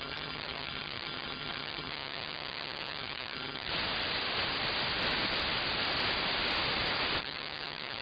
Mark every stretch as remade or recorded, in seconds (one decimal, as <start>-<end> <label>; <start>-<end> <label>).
0.0-3.7 remade; 3.7-7.2 recorded; 7.2-8.0 remade